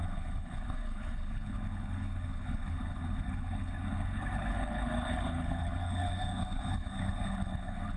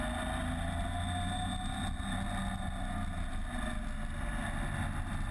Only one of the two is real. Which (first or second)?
second